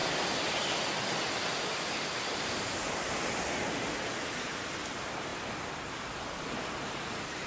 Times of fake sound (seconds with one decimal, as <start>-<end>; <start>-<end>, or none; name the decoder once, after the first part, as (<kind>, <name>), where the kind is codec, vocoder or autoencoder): none